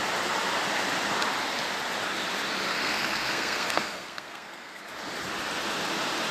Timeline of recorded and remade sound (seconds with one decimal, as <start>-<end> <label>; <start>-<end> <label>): 0.0-2.7 recorded; 2.7-4.8 remade; 4.8-6.3 recorded